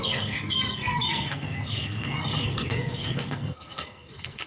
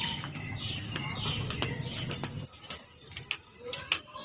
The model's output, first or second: first